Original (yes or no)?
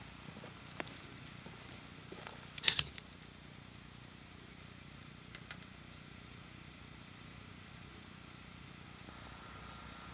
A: yes